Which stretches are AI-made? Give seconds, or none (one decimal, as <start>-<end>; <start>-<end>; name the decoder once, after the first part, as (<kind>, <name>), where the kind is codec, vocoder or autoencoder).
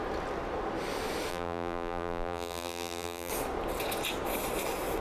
1.3-3.3 (vocoder, BigVGAN v2)